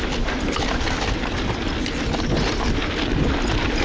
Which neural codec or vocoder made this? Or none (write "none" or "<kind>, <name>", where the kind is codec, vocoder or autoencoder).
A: none